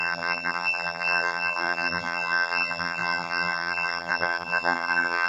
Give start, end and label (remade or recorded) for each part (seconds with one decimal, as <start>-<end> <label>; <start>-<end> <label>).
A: 0.0-5.3 remade